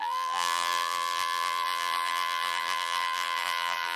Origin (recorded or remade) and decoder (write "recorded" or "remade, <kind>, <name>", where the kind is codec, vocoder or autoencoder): remade, vocoder, BigVGAN v2